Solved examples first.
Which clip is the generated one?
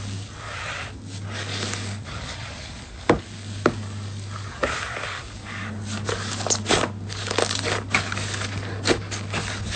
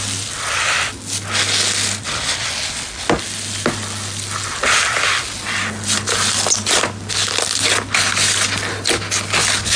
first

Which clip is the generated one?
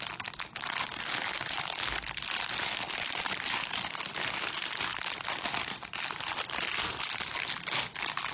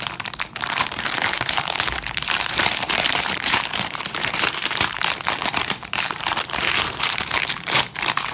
second